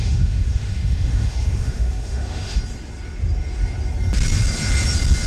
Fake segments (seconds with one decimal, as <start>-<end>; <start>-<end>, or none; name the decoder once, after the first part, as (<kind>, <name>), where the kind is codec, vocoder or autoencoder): 0.0-2.6 (autoencoder, DAC-VAE)